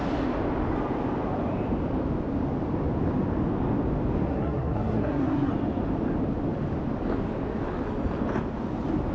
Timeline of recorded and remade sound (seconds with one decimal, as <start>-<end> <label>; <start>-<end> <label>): 0.0-4.3 recorded; 4.3-5.5 remade; 5.5-9.1 recorded